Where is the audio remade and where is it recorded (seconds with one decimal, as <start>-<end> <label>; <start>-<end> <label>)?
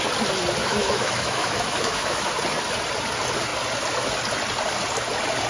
0.0-0.6 recorded; 0.6-2.3 remade; 2.3-5.5 recorded